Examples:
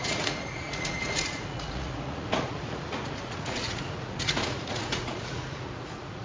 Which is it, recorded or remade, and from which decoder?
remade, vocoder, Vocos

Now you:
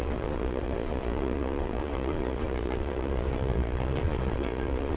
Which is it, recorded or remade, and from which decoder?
remade, vocoder, Vocos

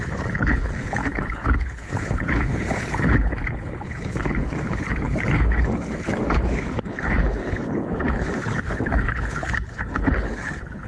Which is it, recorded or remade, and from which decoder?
remade, codec, HILCodec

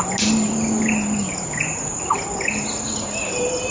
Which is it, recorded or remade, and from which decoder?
recorded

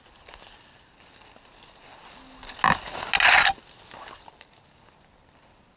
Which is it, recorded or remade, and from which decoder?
recorded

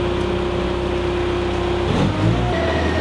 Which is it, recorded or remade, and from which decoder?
recorded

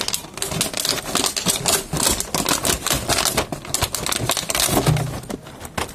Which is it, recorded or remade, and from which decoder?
recorded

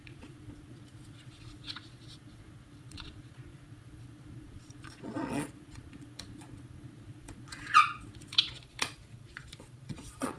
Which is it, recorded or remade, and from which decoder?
remade, vocoder, Vocos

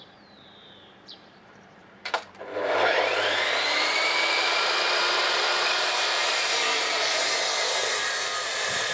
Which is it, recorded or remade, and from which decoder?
remade, vocoder, BigVGAN v2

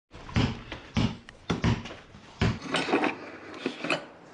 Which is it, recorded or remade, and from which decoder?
recorded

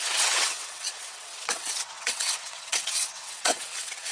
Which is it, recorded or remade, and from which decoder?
remade, vocoder, WaveNeXt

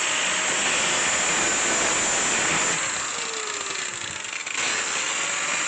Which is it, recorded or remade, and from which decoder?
recorded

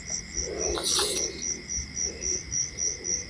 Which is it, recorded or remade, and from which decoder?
recorded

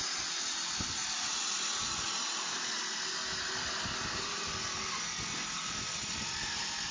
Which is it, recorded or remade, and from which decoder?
recorded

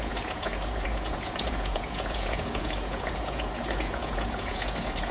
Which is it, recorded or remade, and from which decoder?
remade, vocoder, Vocos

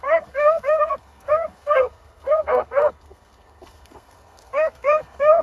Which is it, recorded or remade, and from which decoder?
remade, codec, SNAC